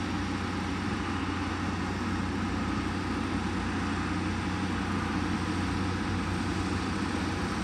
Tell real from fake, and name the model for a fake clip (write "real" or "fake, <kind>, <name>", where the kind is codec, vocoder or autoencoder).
real